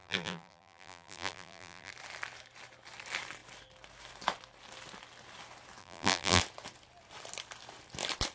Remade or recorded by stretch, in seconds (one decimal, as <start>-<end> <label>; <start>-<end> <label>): 0.0-1.9 remade; 1.9-5.8 recorded; 5.8-6.4 remade; 6.4-8.3 recorded

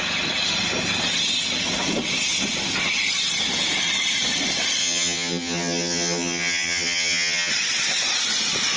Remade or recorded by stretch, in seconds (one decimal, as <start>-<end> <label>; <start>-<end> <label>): 0.0-4.8 recorded; 4.8-7.5 remade; 7.5-8.8 recorded

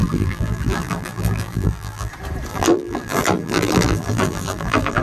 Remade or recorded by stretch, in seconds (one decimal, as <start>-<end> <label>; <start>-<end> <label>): 0.0-2.1 remade; 2.1-2.5 recorded; 2.5-5.0 remade